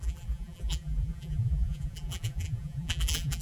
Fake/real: fake